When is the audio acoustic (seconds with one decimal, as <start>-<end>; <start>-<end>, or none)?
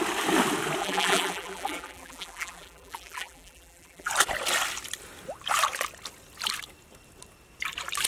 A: 0.0-0.8; 4.1-8.1